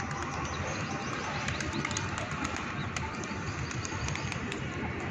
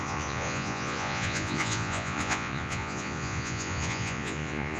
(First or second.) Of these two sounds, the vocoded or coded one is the second